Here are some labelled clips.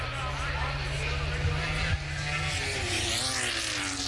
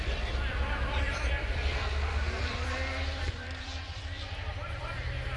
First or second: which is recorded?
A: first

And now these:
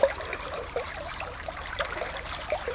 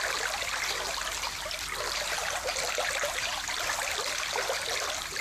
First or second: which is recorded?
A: second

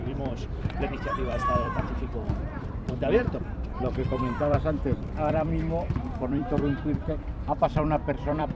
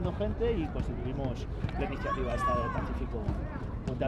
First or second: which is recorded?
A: second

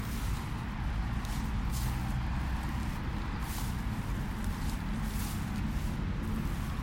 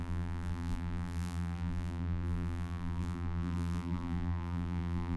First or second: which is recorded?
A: first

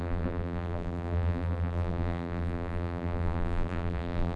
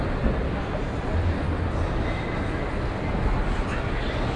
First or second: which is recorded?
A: second